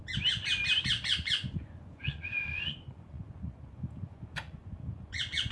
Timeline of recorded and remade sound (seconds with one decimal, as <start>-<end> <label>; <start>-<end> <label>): 0.0-0.9 recorded; 0.9-5.5 remade